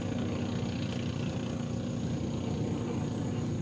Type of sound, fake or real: real